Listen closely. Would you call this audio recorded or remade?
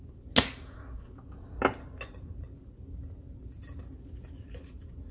recorded